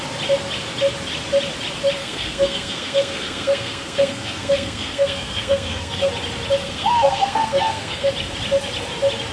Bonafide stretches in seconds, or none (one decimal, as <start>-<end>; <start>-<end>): 0.0-2.0; 6.1-6.6; 8.1-9.3